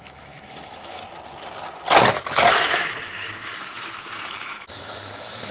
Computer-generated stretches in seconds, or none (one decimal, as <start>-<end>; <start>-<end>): 0.0-1.0; 2.5-5.5